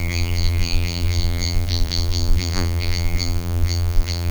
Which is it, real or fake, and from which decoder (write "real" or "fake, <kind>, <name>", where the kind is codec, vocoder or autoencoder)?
fake, vocoder, BigVGAN v2